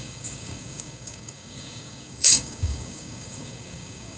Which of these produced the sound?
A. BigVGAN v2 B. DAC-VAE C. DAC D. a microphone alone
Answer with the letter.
C